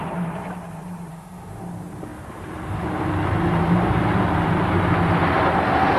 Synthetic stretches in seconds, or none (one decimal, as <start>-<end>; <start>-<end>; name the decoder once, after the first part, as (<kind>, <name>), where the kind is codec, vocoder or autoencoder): 1.1-1.6 (autoencoder, DAC-VAE)